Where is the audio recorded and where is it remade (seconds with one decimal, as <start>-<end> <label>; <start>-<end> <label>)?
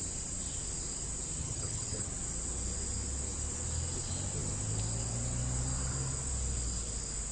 0.0-1.4 recorded; 1.4-2.1 remade; 2.1-7.3 recorded